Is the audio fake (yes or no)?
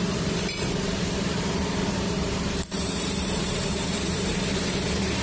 yes